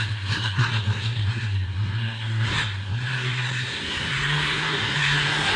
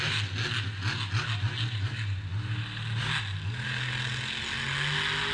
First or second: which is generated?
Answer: first